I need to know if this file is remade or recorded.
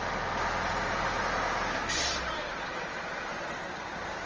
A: recorded